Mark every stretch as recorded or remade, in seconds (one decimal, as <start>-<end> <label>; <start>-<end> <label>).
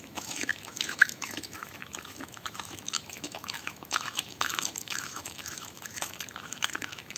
0.0-7.2 remade